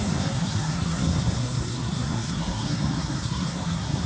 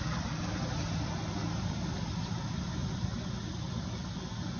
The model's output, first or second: first